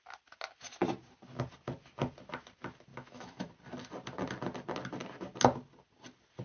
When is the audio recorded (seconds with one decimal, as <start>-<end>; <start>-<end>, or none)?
0.0-2.9; 3.5-6.4